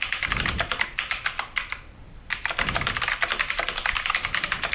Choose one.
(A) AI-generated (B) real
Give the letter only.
A